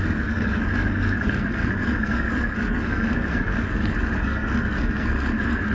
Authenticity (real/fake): fake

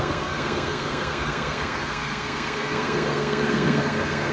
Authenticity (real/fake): fake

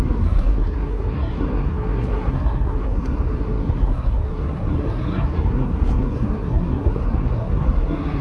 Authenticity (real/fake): fake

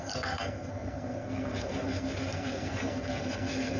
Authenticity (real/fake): fake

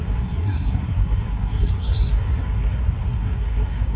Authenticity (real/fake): fake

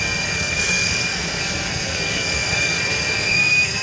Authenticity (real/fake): fake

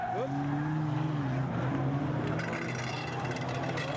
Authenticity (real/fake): real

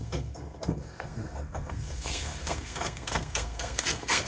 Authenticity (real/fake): fake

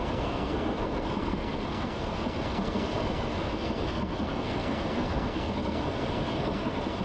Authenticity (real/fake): fake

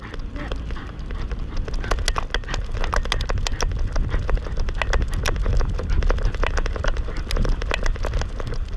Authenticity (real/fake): real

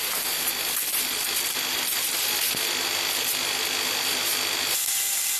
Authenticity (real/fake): real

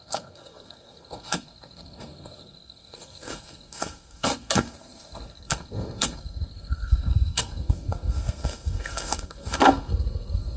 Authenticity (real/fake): fake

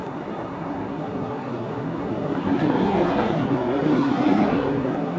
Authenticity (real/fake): fake